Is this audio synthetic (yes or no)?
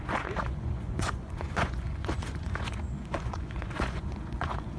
yes